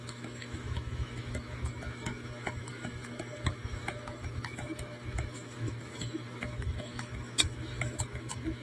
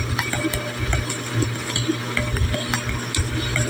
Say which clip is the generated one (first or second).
first